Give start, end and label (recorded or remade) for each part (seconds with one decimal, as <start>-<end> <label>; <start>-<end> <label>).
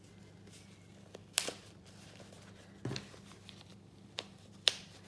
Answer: 0.0-1.2 recorded; 1.2-2.2 remade; 2.2-3.7 recorded; 3.7-5.1 remade